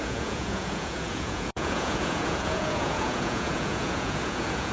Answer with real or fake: fake